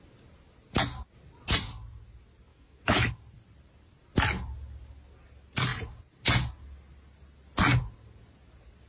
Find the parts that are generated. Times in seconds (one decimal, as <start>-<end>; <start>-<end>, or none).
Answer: 2.5-3.1